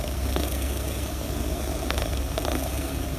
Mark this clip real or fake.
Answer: fake